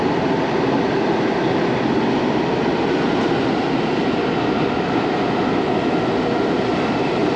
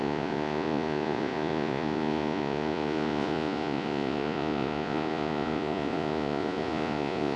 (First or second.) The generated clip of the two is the second